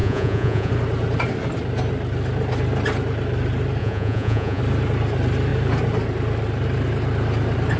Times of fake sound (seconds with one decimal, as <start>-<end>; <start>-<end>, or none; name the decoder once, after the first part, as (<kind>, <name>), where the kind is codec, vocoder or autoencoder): 0.0-0.7 (vocoder, Vocos); 3.8-4.6